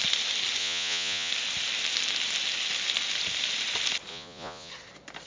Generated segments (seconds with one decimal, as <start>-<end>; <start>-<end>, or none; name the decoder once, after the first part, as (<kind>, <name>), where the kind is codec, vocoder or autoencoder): 0.6-1.3 (vocoder, Vocos); 4.1-4.7